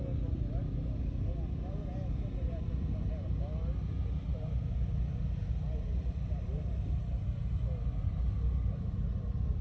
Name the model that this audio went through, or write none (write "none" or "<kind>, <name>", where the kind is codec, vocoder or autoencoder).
none